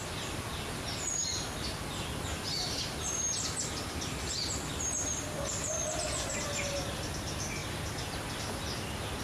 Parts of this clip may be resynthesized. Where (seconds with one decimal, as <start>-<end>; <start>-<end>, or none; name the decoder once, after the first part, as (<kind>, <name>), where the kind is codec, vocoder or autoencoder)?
none